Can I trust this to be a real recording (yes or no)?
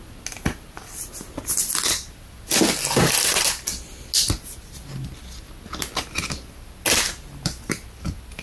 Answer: yes